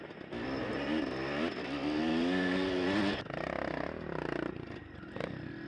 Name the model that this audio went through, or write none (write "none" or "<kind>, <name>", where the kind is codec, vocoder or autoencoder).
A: none